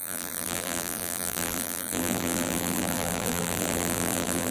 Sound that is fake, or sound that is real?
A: fake